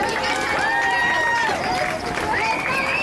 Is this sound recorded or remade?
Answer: recorded